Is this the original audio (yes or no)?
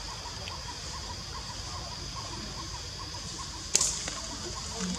yes